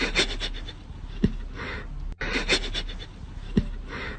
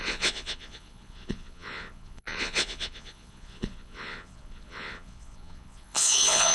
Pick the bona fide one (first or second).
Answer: first